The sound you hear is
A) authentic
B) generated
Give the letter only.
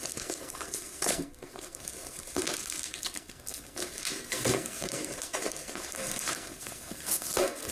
B